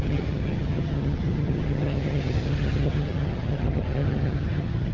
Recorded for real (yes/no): no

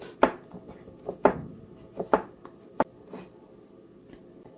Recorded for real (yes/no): yes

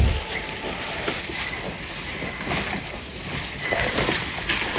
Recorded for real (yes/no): yes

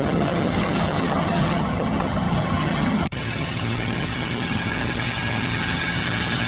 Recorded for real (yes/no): no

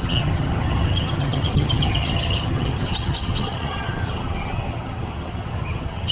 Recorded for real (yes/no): no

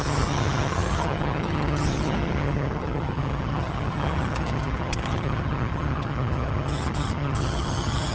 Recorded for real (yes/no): no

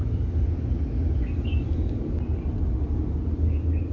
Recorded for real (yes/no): yes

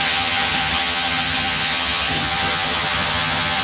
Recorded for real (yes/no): no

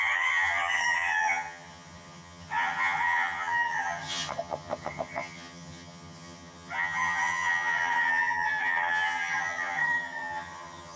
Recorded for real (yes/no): no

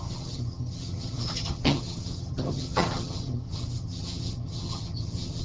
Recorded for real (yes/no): no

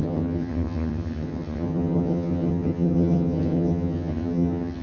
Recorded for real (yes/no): no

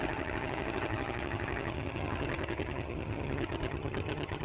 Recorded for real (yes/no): no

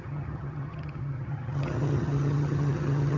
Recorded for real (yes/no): no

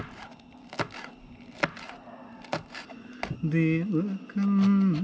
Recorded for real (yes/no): yes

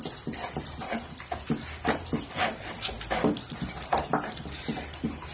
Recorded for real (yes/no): yes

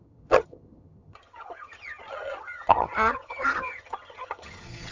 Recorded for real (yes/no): no